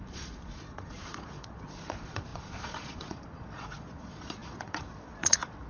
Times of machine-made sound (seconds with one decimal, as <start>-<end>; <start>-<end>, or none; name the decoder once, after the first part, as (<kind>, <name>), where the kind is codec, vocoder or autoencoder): 0.0-5.7 (vocoder, Vocos)